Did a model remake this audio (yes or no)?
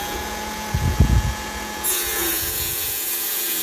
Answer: yes